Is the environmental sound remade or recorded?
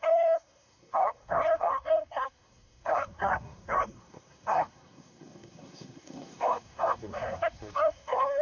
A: remade